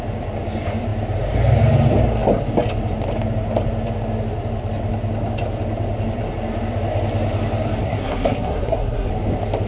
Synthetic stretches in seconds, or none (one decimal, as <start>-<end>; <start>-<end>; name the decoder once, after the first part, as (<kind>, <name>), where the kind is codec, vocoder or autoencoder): 7.8-9.1 (codec, SNAC)